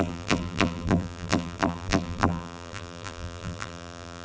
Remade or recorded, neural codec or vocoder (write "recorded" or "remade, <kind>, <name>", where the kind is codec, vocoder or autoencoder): remade, vocoder, BigVGAN v2